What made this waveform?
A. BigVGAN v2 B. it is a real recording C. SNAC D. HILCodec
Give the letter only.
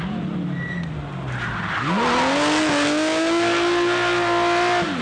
B